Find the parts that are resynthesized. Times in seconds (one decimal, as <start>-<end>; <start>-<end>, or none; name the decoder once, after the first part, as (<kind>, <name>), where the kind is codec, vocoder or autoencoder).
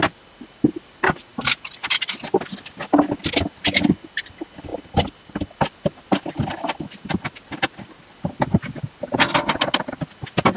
none